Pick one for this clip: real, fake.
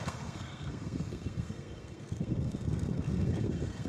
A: fake